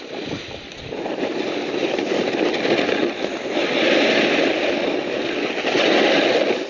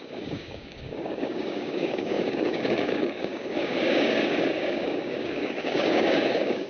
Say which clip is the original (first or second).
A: first